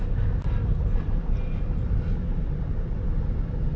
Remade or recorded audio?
recorded